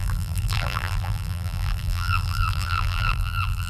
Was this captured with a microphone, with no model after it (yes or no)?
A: no